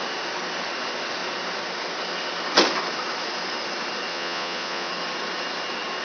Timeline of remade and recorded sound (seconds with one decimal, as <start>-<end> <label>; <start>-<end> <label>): 0.0-4.1 recorded; 4.1-4.9 remade; 4.9-6.0 recorded